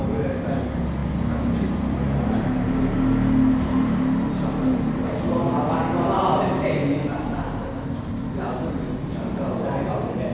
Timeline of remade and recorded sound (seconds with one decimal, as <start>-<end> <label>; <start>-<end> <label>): 0.0-10.3 recorded